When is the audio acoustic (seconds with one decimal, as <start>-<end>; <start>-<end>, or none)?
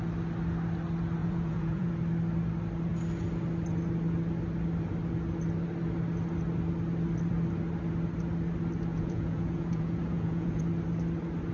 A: 0.0-1.2; 1.9-8.9; 10.6-11.5